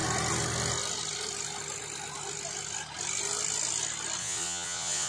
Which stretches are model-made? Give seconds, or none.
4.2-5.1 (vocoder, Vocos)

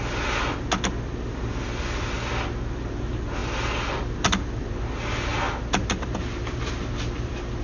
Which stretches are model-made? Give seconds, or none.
none

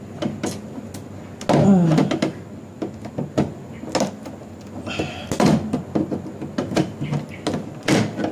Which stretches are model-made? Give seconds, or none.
none

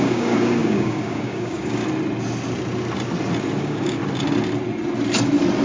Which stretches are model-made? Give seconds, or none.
0.0-1.8 (codec, DAC); 3.6-4.0

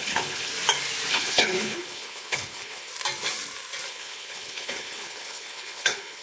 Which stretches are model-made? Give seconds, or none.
0.0-0.5 (codec, HILCodec); 1.1-2.9; 3.9-6.2

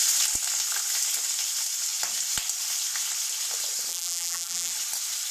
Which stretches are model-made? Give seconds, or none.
3.9-4.7 (vocoder, BigVGAN v2)